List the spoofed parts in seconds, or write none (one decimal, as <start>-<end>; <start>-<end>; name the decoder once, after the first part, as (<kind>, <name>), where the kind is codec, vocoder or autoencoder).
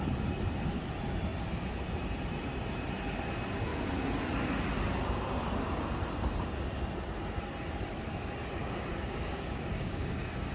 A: 8.6-10.5 (codec, DAC)